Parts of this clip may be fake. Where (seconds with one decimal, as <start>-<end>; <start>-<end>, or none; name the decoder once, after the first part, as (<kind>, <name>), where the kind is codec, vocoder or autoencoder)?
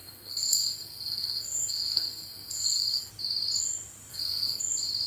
0.0-3.1 (codec, SNAC); 4.1-4.6